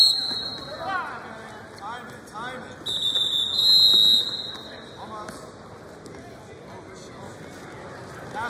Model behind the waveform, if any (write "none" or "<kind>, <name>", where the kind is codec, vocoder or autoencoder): none